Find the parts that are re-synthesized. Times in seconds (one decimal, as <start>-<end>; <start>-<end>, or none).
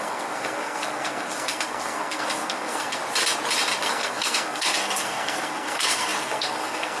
0.0-3.0; 3.8-7.0